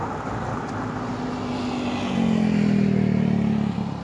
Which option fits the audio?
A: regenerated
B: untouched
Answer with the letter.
B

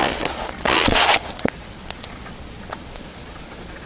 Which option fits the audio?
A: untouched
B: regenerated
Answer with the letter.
B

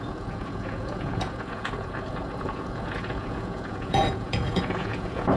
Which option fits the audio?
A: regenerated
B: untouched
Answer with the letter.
A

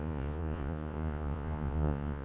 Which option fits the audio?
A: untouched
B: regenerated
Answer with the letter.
B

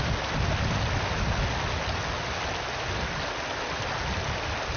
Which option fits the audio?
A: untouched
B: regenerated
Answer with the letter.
A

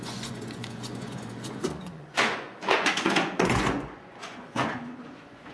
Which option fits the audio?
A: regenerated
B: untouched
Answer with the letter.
A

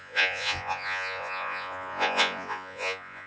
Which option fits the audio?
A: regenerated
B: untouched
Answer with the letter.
A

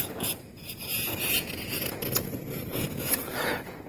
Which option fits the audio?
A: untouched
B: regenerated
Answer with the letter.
B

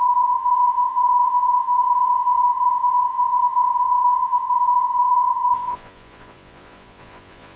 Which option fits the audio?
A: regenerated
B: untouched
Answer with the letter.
A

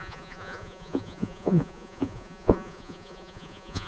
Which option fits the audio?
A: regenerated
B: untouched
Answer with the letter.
A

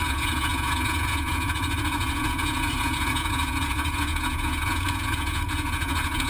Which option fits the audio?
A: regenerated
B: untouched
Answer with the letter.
A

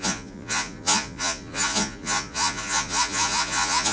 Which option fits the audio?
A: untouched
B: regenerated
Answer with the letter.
B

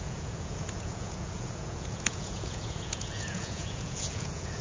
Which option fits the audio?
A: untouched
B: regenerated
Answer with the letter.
B